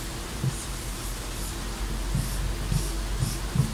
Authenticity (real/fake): real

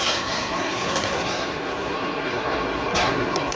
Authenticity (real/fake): fake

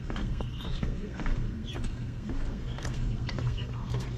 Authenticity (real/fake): fake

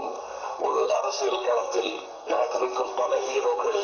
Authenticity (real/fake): fake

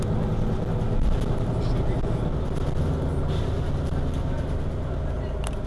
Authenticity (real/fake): real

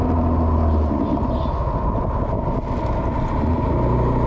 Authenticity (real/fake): real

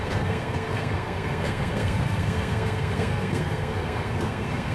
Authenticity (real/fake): fake